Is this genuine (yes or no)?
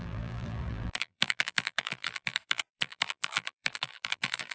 no